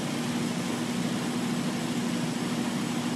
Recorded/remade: recorded